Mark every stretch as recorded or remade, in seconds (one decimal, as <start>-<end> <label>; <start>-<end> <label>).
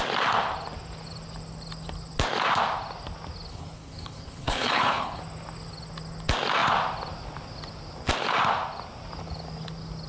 0.0-3.5 recorded; 3.5-5.2 remade; 5.2-10.1 recorded